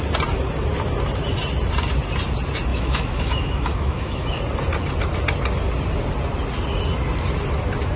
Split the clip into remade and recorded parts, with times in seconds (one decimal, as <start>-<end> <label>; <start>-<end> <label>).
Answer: 0.0-2.7 recorded; 2.7-4.4 remade; 4.4-8.0 recorded